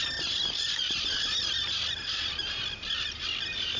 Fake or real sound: real